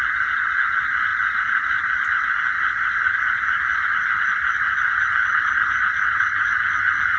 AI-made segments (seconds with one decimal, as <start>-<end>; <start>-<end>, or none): none

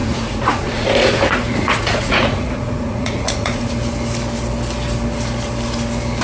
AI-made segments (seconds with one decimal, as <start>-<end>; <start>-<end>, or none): 0.0-3.7

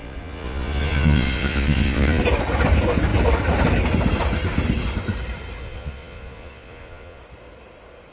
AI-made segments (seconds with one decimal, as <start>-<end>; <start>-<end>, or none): 0.0-2.2; 5.6-7.2

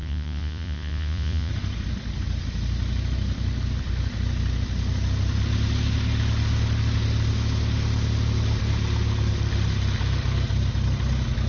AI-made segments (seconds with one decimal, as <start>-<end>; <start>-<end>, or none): 0.0-1.5

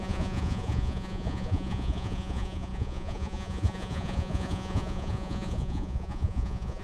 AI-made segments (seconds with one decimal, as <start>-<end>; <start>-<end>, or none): 0.0-6.8

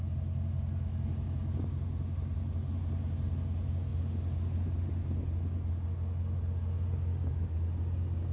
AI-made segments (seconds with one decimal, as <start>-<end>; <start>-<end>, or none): none